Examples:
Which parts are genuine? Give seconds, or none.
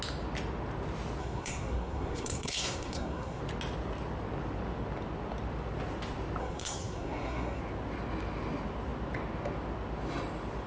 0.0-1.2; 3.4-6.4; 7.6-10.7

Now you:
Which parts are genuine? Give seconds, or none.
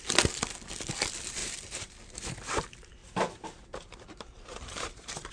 0.0-1.4; 2.0-3.0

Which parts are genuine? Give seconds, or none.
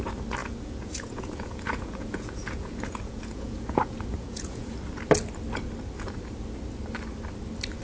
0.0-0.4; 4.7-7.8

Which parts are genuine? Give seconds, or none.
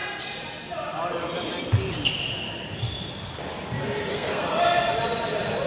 0.0-4.1; 4.6-5.7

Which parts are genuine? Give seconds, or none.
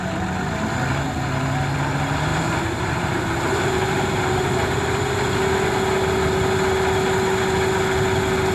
0.0-2.3; 5.0-8.5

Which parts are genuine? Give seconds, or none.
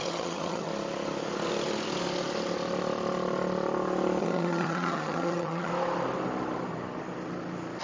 0.7-4.2; 5.7-7.8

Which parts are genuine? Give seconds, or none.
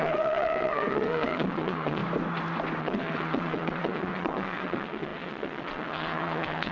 2.0-2.8